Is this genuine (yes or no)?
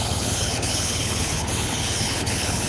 no